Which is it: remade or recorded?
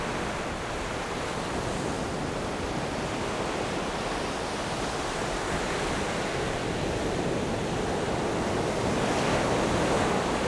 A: recorded